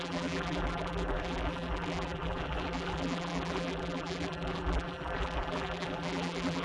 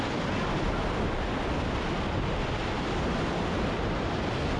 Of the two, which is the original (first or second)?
second